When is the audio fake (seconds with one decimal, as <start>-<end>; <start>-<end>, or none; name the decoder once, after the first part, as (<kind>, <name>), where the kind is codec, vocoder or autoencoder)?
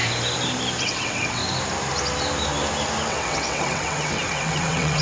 0.8-1.4 (vocoder, WaveNeXt); 3.1-5.0